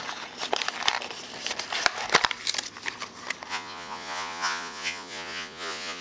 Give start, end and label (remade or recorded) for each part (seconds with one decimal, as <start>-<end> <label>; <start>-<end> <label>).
0.0-3.5 recorded; 3.5-6.0 remade